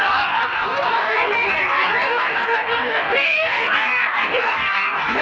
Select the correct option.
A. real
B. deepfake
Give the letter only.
B